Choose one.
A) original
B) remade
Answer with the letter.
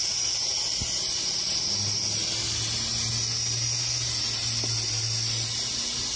A